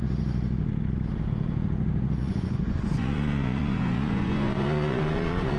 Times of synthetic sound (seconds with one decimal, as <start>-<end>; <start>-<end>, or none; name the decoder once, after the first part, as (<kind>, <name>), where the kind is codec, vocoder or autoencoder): 2.2-5.6 (vocoder, Vocos)